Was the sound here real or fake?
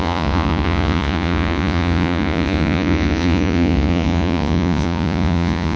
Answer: fake